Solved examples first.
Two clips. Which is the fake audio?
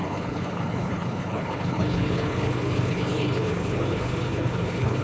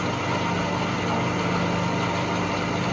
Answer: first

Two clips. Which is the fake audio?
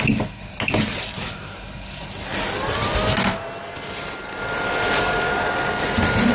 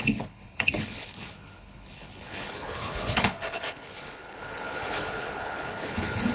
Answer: second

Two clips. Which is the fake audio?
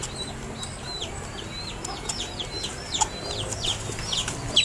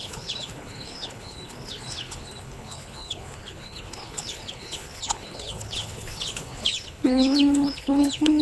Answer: second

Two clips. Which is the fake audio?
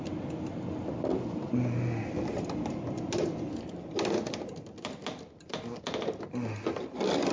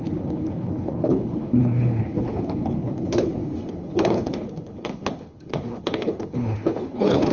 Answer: second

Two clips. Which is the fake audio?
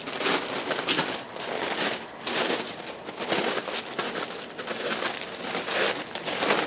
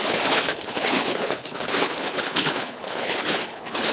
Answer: second